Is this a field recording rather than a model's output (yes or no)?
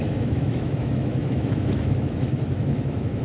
no